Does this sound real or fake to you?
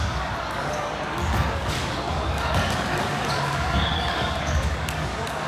fake